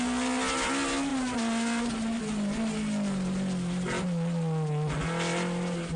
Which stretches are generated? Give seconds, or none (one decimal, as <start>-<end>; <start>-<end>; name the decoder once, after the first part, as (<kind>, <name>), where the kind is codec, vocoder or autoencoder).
1.1-2.2 (vocoder, BigVGAN v2)